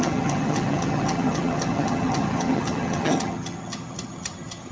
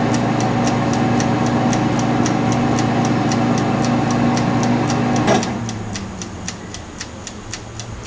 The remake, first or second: first